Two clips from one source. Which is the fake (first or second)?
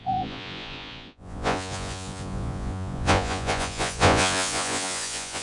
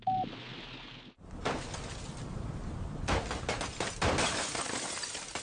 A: first